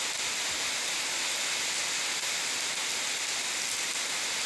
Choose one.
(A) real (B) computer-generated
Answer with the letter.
A